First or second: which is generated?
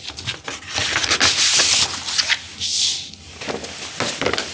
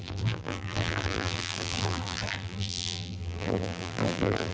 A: second